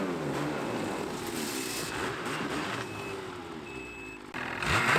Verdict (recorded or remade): recorded